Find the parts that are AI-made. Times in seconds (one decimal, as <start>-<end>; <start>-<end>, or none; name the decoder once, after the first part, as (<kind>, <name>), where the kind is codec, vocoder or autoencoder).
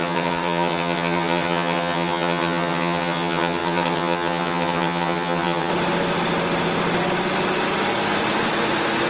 0.0-5.7 (vocoder, HiFi-GAN)